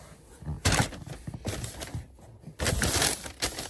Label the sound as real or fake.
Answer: real